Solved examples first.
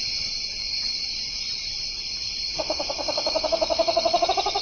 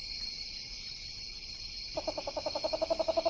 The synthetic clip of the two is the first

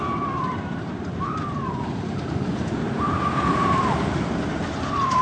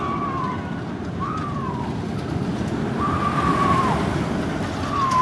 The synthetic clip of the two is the first